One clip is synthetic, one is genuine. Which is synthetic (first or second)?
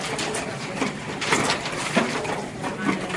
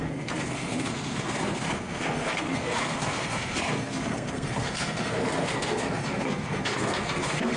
second